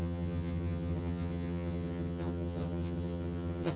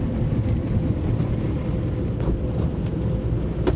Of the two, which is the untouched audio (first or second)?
second